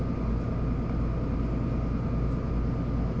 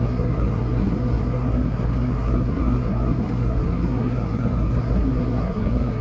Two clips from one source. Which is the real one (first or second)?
first